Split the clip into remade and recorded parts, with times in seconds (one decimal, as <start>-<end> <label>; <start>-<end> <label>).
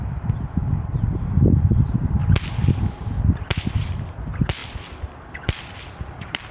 0.0-2.2 remade; 2.2-3.6 recorded; 3.6-4.6 remade; 4.6-6.5 recorded